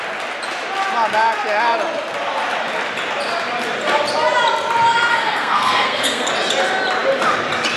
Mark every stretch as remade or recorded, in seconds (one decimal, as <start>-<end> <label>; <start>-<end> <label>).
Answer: 0.0-5.1 recorded; 5.1-6.3 remade; 6.3-7.8 recorded